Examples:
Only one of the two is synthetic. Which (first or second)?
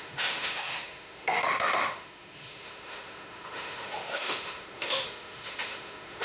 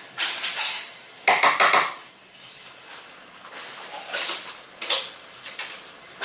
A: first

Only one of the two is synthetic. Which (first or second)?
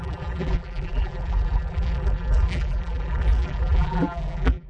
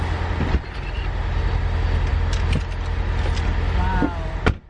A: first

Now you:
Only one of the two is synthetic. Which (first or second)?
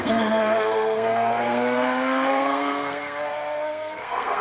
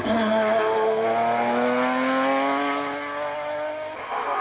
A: first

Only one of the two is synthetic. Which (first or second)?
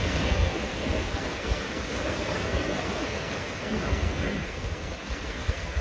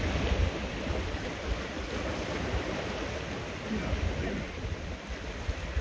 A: first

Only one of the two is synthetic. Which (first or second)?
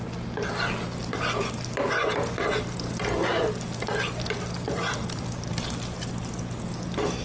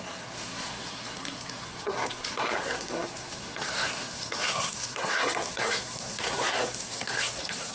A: second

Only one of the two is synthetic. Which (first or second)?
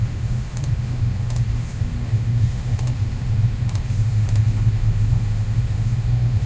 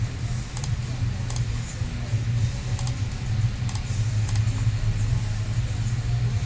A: first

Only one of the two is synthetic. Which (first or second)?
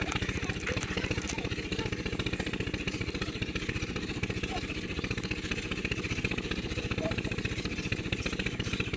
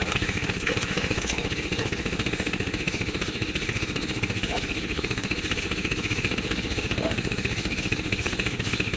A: second